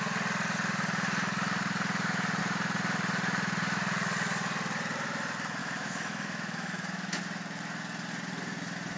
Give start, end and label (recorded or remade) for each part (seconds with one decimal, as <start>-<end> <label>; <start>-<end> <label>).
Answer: 0.0-5.6 recorded; 5.6-7.2 remade; 7.2-9.0 recorded